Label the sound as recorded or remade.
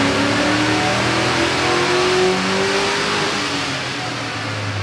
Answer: recorded